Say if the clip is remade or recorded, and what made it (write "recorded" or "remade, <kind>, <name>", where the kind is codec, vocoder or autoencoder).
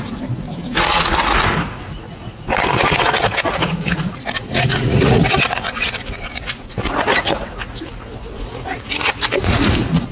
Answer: remade, vocoder, Vocos